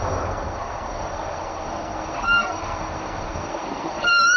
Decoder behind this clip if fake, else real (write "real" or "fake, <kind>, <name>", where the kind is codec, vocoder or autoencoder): fake, codec, SNAC